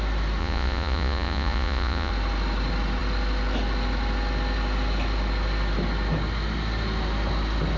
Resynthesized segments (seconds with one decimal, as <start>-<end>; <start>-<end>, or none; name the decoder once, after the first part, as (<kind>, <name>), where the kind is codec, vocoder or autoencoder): 0.4-2.1 (vocoder, Vocos)